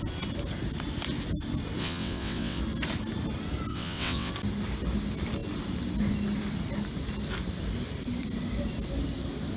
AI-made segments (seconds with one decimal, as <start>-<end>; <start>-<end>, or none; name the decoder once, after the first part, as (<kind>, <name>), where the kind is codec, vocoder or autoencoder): 1.8-2.6 (vocoder, WaveNeXt); 3.7-4.3